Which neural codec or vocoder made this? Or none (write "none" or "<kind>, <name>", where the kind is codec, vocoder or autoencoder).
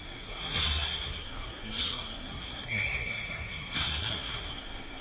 codec, SNAC